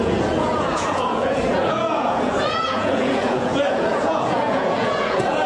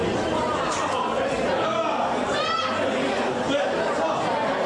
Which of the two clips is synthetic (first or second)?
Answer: first